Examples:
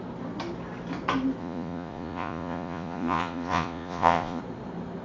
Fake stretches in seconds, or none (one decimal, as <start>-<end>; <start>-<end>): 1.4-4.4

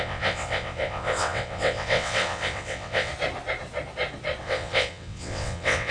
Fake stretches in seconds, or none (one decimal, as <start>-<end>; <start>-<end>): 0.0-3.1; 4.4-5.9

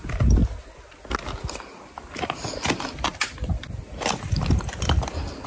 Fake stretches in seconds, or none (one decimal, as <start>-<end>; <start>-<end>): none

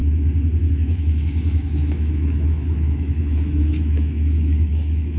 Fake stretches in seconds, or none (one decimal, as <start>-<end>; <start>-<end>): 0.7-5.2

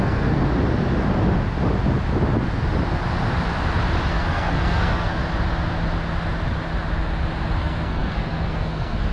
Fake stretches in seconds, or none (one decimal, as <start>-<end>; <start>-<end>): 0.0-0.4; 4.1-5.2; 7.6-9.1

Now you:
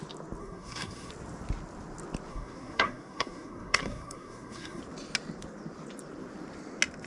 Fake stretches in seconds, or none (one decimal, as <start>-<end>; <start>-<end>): 0.4-1.1; 2.3-4.8

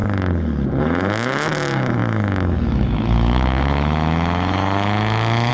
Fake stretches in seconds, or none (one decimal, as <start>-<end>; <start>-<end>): 0.8-5.5